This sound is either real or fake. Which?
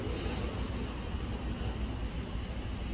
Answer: real